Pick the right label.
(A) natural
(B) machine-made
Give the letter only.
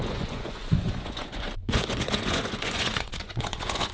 B